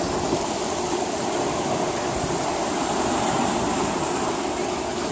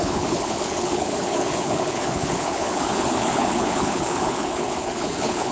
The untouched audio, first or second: first